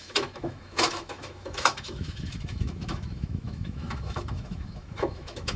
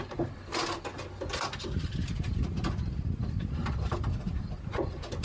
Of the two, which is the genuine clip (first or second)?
second